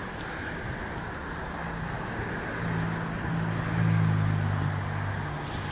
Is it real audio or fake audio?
real